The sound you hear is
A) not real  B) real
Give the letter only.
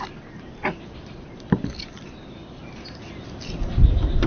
B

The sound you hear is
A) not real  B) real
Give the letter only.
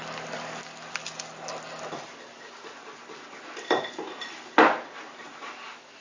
B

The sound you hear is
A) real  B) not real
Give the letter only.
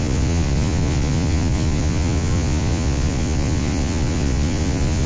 B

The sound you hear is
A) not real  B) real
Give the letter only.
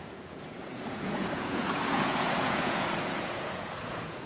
A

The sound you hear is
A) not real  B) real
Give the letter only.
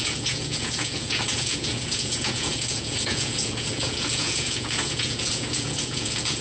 A